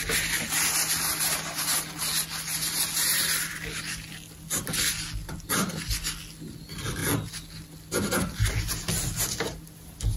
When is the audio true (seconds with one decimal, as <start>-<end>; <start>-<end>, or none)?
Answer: 0.0-10.2